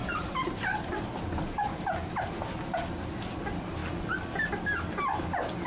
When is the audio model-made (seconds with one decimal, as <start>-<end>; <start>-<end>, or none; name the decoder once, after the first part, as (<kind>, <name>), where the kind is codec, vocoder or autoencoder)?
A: none